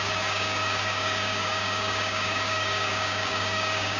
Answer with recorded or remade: remade